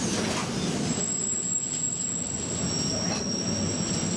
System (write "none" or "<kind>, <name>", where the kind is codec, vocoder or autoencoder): none